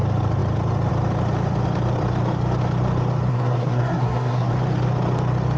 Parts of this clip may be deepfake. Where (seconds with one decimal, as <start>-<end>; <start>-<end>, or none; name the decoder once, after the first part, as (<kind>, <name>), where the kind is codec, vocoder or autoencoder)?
3.3-4.5 (codec, SNAC)